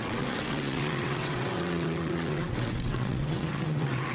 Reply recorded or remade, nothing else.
remade